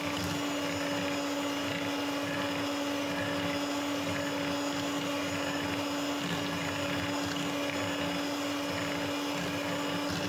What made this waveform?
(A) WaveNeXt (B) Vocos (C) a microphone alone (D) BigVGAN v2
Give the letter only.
C